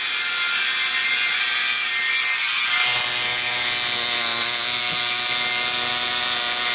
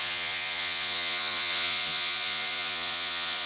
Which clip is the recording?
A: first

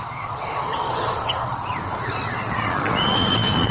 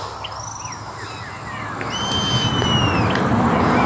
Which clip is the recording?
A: second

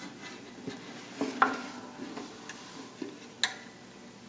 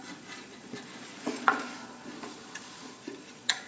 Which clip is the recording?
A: first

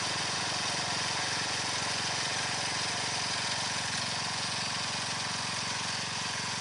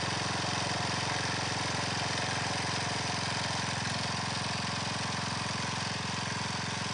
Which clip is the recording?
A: second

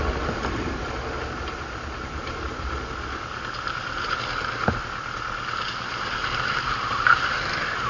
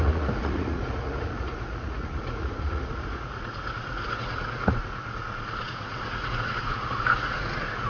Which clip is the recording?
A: first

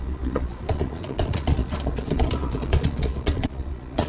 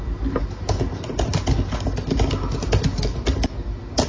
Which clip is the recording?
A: second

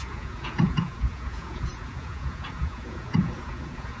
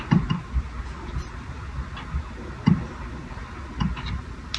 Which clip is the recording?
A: second